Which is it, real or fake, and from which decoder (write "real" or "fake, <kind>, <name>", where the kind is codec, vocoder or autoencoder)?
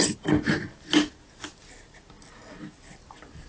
real